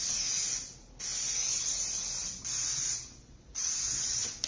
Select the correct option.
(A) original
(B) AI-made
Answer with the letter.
A